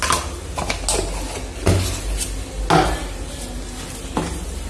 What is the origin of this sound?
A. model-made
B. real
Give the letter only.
B